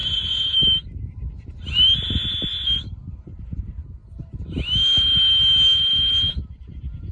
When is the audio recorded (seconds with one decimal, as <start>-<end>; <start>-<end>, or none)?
0.0-1.5; 4.0-6.3